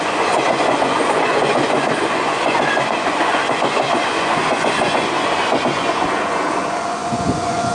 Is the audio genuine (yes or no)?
no